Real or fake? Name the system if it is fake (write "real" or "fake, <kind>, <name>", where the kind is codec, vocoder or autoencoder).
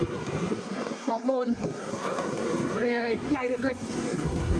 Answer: fake, codec, SNAC